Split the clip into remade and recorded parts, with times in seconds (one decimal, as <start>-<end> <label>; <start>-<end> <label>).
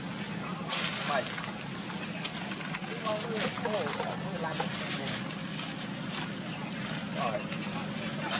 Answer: 0.0-8.4 recorded